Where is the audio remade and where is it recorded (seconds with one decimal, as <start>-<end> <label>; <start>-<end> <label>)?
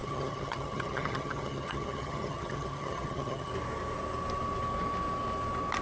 0.0-3.5 remade; 3.5-5.8 recorded